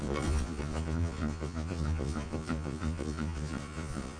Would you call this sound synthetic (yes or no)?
yes